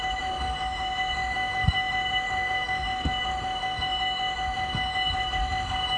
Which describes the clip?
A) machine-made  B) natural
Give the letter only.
A